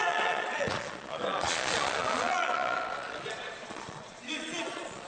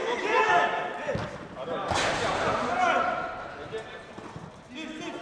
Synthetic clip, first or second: first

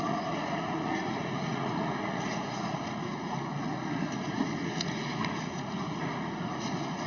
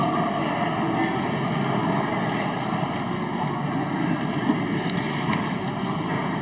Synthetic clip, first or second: first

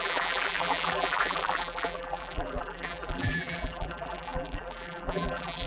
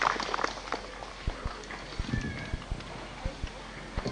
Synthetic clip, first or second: first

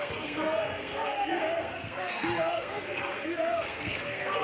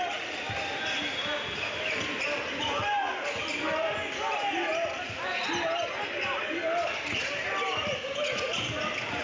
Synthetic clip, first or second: first